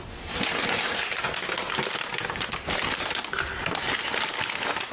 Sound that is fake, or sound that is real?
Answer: real